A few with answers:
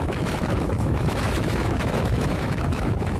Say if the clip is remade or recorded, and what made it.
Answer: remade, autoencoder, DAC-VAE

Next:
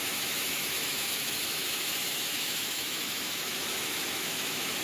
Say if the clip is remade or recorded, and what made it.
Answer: remade, autoencoder, DAC-VAE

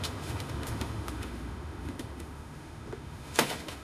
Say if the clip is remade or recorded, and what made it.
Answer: remade, autoencoder, DAC-VAE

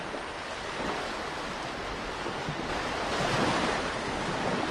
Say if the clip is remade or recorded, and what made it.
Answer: recorded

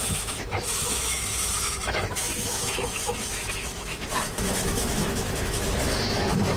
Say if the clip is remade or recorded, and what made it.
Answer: remade, autoencoder, DAC-VAE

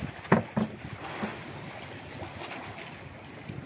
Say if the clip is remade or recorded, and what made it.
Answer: recorded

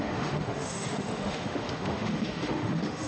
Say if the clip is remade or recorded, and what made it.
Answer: remade, autoencoder, DAC-VAE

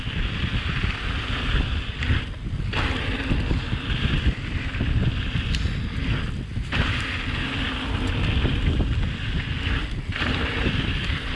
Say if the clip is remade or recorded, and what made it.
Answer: recorded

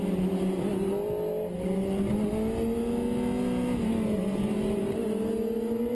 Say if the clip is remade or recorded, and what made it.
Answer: recorded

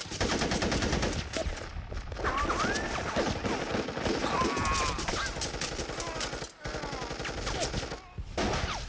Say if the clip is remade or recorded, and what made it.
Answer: recorded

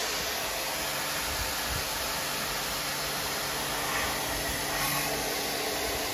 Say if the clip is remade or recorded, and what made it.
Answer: recorded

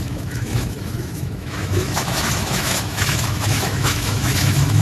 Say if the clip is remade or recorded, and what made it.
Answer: remade, autoencoder, DAC-VAE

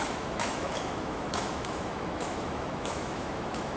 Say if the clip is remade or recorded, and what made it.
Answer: remade, autoencoder, DAC-VAE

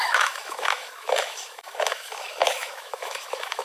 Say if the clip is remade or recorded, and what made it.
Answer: remade, autoencoder, DAC-VAE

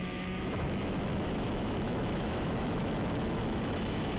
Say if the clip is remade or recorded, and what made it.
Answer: remade, autoencoder, DAC-VAE